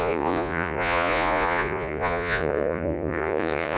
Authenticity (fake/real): fake